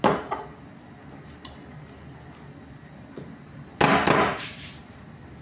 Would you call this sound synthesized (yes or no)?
no